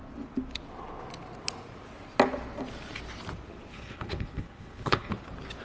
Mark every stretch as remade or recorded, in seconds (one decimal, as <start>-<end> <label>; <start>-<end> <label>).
0.0-3.7 recorded; 3.7-5.1 remade; 5.1-5.6 recorded